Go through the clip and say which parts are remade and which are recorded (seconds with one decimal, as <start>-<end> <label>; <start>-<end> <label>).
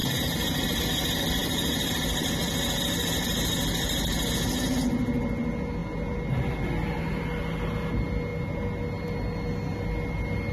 0.0-0.8 remade; 0.8-1.4 recorded; 1.4-4.7 remade; 4.7-10.5 recorded